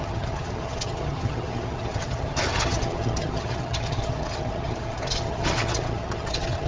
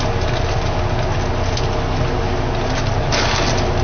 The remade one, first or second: first